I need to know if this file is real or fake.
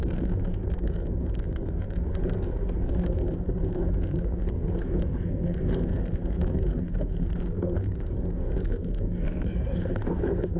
fake